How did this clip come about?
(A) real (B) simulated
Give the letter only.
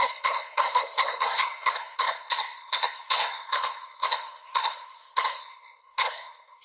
B